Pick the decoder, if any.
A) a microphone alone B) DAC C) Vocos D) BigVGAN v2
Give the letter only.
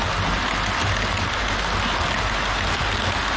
A